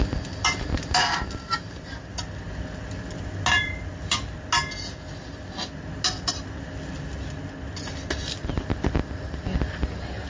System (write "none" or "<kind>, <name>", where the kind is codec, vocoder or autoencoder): none